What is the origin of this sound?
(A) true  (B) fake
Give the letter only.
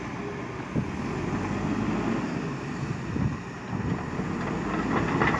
A